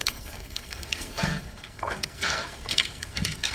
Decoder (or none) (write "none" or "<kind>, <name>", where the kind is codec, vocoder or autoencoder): codec, SNAC